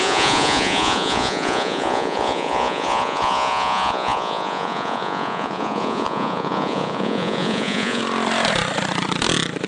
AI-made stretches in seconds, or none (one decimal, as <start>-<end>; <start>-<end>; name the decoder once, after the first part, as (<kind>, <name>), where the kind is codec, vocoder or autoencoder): 0.0-8.0 (vocoder, Vocos)

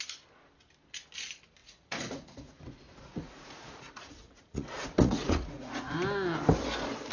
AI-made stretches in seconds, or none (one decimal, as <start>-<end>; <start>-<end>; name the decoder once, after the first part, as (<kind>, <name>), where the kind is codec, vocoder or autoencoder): 1.6-5.9 (vocoder, Vocos)